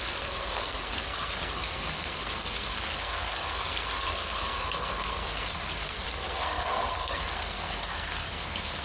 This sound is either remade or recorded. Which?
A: remade